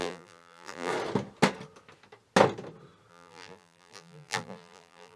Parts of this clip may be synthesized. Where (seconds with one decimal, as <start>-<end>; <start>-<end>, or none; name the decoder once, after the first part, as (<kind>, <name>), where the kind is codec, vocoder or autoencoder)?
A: 0.0-0.9 (vocoder, BigVGAN v2); 3.1-5.2